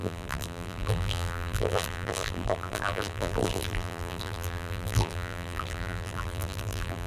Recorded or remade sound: remade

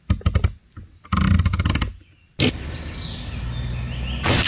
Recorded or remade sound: recorded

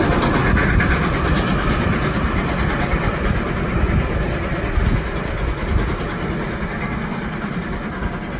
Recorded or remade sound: recorded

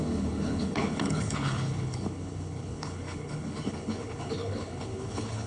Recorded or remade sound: remade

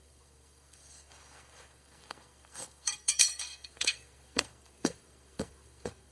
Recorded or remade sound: remade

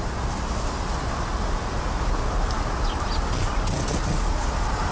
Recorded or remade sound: recorded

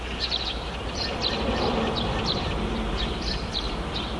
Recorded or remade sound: remade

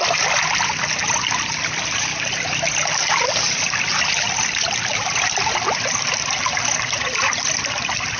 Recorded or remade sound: recorded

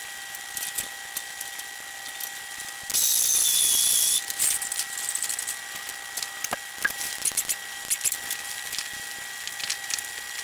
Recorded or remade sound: recorded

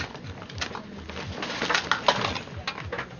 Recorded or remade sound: recorded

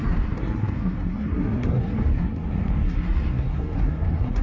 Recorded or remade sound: remade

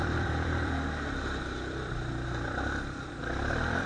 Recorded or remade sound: remade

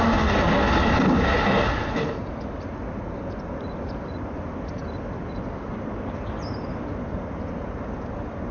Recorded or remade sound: recorded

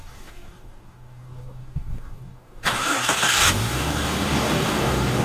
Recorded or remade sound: remade